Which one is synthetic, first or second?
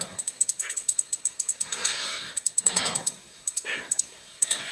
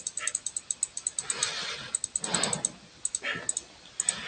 first